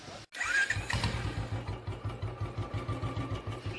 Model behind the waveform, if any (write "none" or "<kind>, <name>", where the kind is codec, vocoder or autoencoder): none